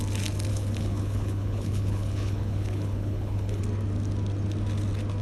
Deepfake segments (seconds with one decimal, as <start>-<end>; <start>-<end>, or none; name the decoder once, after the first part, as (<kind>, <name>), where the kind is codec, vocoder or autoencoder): 0.5-3.6 (codec, HILCodec)